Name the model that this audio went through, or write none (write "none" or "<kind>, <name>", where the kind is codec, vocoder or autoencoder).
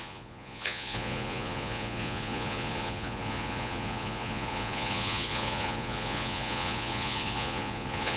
vocoder, Vocos